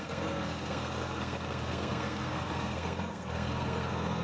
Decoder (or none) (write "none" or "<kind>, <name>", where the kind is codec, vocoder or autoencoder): codec, SNAC